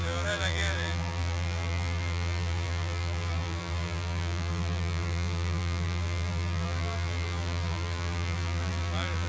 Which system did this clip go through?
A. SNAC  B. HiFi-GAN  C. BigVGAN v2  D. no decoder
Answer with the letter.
C